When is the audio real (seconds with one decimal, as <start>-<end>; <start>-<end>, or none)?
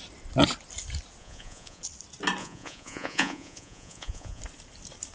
0.0-1.2; 1.8-2.4; 4.4-5.1